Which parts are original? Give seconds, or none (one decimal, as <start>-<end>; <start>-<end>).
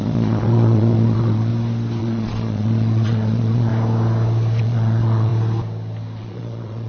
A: 1.5-2.0; 3.7-4.6; 5.3-6.2